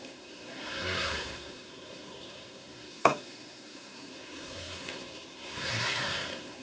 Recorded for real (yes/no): no